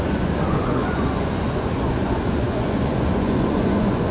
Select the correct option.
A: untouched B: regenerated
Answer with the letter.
B